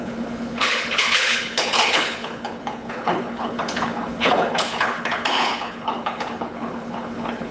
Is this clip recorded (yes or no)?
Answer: no